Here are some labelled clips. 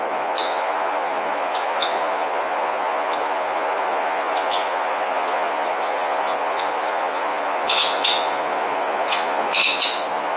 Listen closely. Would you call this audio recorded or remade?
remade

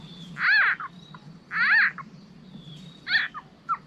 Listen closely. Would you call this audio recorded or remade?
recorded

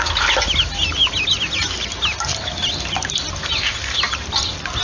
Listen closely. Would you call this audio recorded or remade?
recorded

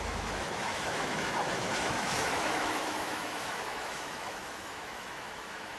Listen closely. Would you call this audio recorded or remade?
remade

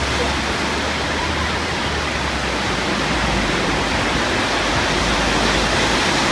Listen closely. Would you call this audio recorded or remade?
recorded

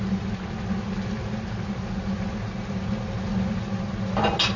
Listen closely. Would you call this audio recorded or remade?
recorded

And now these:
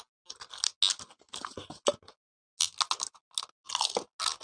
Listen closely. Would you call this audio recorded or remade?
recorded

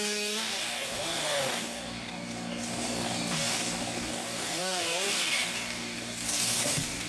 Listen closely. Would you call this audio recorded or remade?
remade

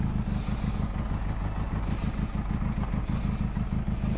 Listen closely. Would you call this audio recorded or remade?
recorded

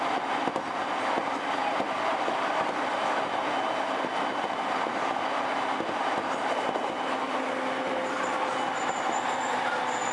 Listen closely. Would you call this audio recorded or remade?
recorded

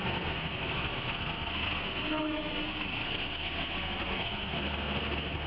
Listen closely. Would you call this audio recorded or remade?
remade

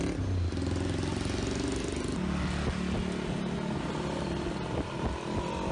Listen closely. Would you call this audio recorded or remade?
recorded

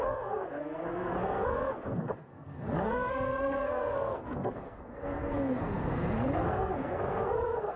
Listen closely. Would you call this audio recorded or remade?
remade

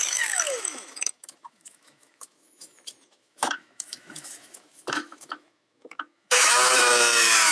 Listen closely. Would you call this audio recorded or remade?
remade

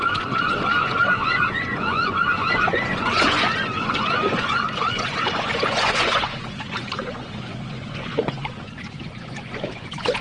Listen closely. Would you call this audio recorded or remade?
remade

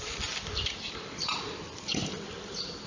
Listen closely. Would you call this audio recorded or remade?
recorded